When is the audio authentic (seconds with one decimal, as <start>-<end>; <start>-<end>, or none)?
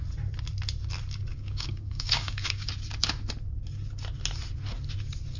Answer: 0.0-1.3; 2.7-5.4